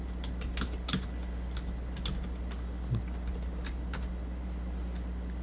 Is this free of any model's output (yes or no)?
yes